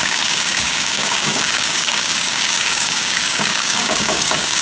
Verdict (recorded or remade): remade